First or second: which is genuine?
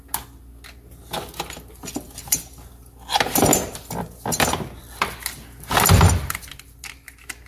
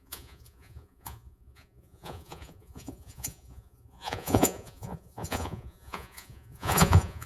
first